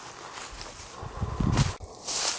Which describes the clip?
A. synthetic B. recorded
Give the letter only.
B